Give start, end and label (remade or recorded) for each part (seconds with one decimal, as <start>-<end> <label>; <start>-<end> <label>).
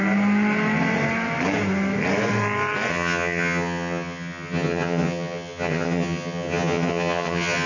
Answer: 0.0-2.9 recorded; 2.9-7.7 remade